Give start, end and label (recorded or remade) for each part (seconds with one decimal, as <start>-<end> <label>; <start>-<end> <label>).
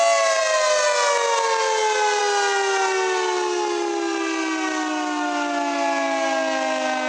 0.0-7.1 recorded